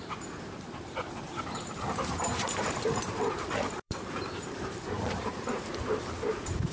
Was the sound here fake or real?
fake